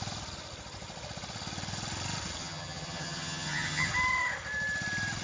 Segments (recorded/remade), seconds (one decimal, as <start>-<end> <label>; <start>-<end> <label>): 0.0-2.4 recorded; 2.4-3.9 remade; 3.9-5.2 recorded